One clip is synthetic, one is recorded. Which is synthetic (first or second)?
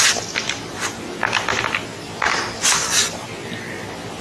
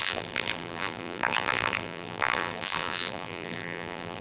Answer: second